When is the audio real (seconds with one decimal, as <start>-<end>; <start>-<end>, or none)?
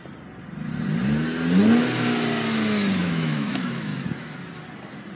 0.0-3.0; 3.9-5.2